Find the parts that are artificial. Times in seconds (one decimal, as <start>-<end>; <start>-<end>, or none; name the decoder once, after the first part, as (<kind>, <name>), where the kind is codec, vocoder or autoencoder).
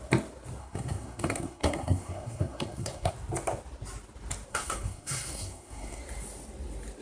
0.6-3.1 (codec, SNAC); 4.5-6.0